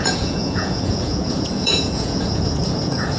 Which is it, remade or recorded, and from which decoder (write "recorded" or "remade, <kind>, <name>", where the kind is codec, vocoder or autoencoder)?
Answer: remade, vocoder, Vocos